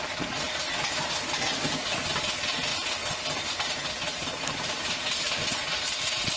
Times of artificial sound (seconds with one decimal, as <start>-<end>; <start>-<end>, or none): none